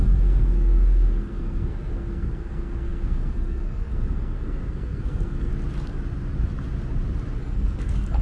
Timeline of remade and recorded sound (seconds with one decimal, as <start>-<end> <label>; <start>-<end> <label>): 0.0-5.5 remade; 5.5-7.4 recorded; 7.4-8.2 remade